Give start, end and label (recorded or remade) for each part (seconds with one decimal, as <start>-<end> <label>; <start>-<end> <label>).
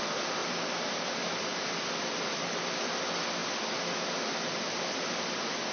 0.0-5.7 recorded